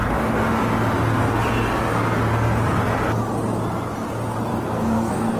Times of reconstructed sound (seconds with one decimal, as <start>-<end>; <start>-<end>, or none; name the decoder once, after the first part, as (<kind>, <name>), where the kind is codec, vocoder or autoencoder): 4.5-5.4 (codec, SNAC)